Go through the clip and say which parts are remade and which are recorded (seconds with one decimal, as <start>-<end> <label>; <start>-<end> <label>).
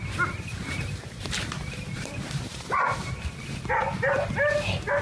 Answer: 0.0-0.5 recorded; 0.5-3.3 remade; 3.3-5.0 recorded